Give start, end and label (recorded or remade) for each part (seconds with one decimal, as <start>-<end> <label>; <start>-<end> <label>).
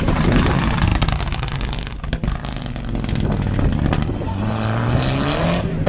0.0-5.9 recorded